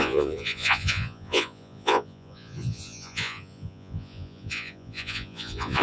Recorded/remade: remade